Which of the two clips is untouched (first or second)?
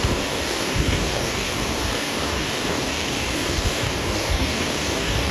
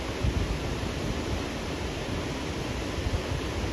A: second